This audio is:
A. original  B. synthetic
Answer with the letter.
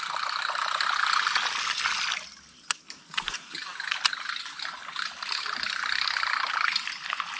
A